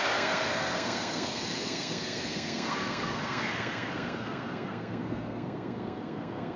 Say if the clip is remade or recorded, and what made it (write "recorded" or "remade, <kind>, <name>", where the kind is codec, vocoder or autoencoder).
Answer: remade, codec, SNAC